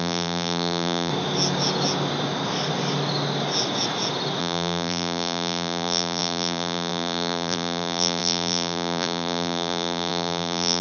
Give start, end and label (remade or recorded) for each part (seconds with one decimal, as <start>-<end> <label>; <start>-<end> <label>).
0.0-1.1 remade; 1.1-4.4 recorded; 4.4-10.8 remade